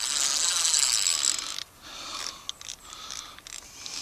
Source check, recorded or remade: recorded